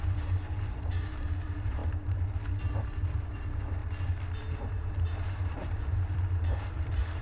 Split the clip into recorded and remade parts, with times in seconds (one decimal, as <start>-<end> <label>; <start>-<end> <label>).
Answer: 0.0-3.8 remade; 3.8-4.4 recorded; 4.4-7.2 remade